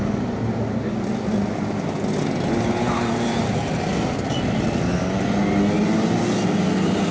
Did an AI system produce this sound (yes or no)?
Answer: no